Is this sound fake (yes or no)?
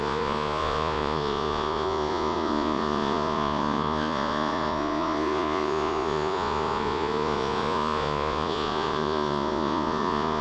yes